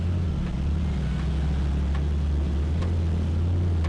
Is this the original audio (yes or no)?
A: yes